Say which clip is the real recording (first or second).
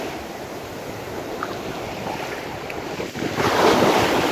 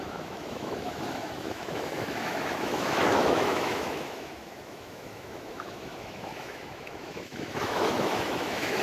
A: first